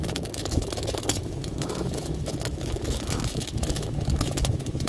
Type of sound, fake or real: fake